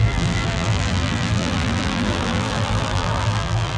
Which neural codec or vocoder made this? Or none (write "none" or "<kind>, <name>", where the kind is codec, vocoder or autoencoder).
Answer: vocoder, BigVGAN v2